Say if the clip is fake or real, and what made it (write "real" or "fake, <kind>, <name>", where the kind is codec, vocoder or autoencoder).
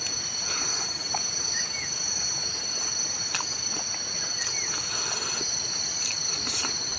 real